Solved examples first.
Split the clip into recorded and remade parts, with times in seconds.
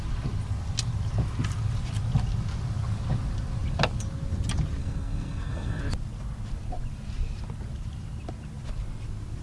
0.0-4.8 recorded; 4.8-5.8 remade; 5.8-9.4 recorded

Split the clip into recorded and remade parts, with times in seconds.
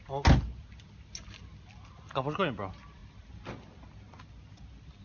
0.0-5.0 recorded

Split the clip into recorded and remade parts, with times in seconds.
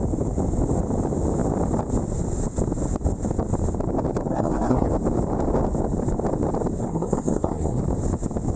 0.0-4.3 recorded; 4.3-4.9 remade; 4.9-6.8 recorded; 6.8-7.8 remade; 7.8-8.6 recorded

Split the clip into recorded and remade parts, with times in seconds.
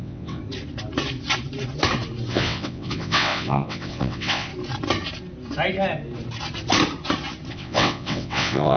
0.0-0.4 remade; 0.4-2.3 recorded; 2.3-4.5 remade; 4.5-7.5 recorded; 7.5-8.8 remade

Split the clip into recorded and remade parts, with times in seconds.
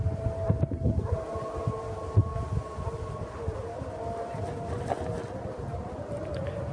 0.0-6.7 recorded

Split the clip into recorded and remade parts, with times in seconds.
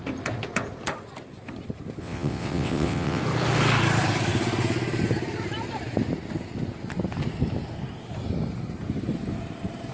0.0-2.0 recorded; 2.0-3.2 remade; 3.2-9.9 recorded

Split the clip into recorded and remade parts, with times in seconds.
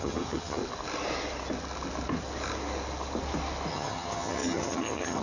0.0-0.6 remade; 0.6-3.7 recorded; 3.7-5.2 remade